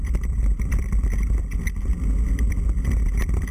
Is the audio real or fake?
fake